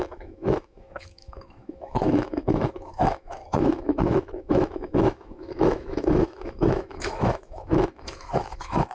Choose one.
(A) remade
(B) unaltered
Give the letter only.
A